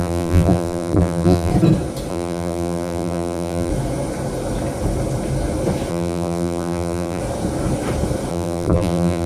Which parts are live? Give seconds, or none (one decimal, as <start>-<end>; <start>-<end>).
1.5-2.1; 3.7-5.9; 7.2-8.3